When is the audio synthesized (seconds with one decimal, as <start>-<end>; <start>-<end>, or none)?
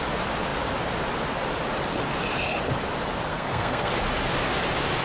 3.3-3.9